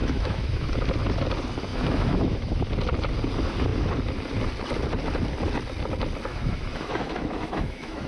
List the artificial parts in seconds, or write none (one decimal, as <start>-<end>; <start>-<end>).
0.0-0.7; 1.7-2.6; 6.3-8.1